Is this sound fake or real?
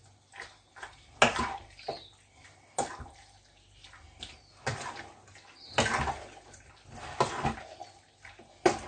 real